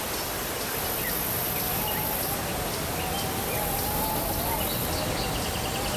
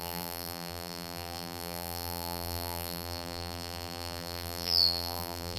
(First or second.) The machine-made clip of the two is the second